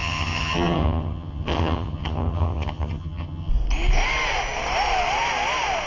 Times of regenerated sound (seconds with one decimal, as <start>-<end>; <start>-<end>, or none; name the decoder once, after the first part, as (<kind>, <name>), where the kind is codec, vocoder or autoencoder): 0.0-3.5 (vocoder, HiFi-GAN)